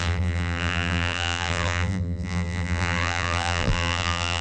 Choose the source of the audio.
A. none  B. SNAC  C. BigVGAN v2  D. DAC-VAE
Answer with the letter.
C